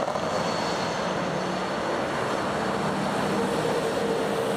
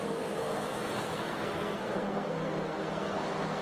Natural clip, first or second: first